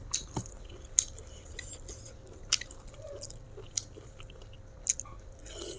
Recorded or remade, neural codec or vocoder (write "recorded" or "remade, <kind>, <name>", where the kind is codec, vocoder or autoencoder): recorded